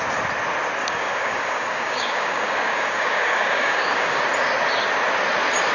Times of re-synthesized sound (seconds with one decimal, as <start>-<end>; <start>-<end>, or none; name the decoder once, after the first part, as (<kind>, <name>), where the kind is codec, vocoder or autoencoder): 0.8-4.2 (codec, DAC)